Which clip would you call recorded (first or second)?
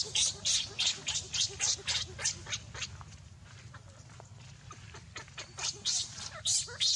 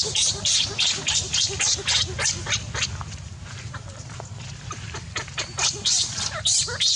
first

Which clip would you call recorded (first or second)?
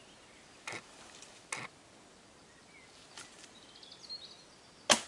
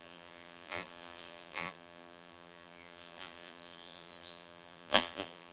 first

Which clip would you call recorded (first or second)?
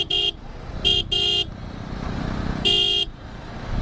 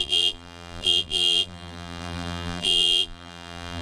first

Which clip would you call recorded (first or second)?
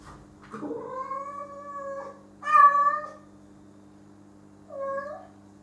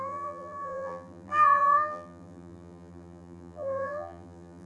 first